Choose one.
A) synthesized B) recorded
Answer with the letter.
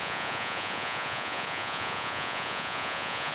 A